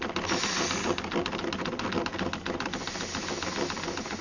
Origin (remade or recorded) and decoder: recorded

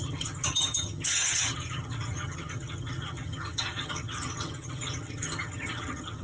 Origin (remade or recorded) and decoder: remade, vocoder, HiFi-GAN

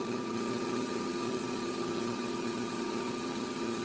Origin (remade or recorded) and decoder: remade, vocoder, HiFi-GAN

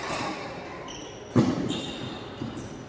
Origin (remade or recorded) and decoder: recorded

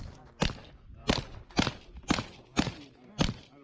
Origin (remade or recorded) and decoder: recorded